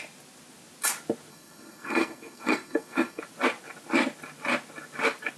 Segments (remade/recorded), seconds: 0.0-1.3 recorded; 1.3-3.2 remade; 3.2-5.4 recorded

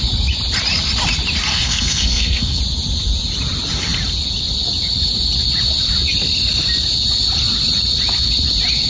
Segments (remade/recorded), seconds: 0.0-1.5 recorded; 1.5-2.6 remade; 2.6-8.9 recorded

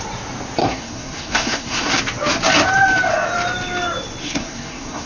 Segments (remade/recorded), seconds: 0.0-0.6 recorded; 0.6-2.0 remade; 2.0-4.2 recorded; 4.2-5.1 remade

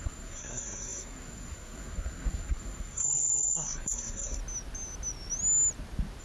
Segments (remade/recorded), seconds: 0.0-4.4 remade; 4.4-6.2 recorded